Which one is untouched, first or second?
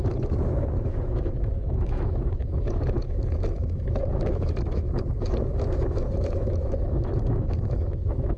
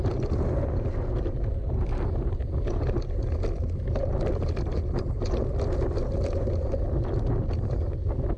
second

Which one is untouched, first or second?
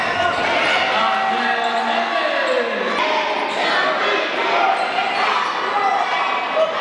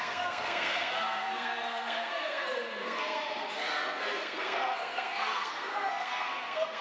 first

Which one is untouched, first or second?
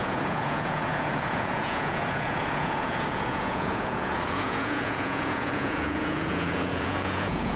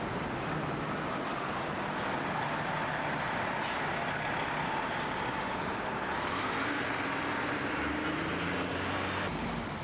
second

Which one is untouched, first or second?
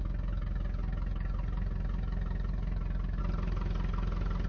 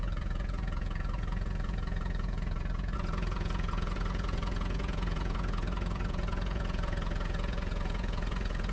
first